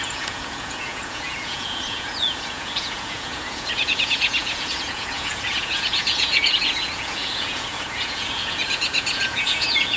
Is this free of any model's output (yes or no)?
no